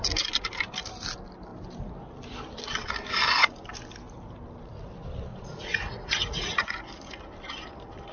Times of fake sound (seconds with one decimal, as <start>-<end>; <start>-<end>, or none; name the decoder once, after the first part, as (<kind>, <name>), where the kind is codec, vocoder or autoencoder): 5.3-6.8 (vocoder, Vocos)